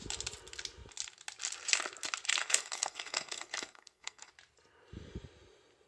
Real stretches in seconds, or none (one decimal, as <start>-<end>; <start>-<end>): 0.0-2.4; 4.3-5.9